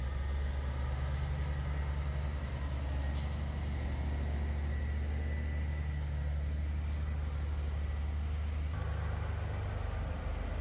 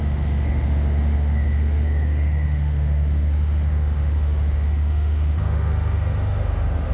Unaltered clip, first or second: first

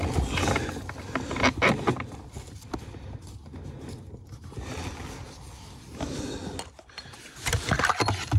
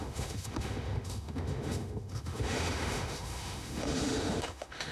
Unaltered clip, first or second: first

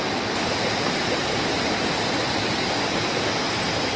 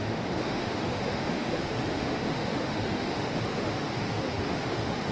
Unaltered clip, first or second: first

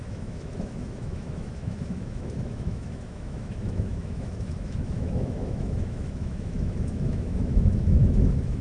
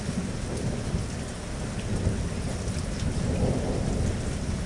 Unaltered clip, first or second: second